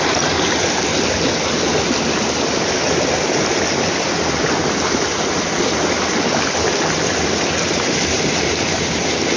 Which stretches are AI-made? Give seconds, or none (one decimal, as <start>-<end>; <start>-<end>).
none